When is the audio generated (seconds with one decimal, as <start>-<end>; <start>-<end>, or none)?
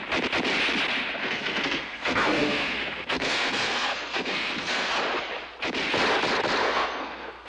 1.2-4.9; 6.6-7.5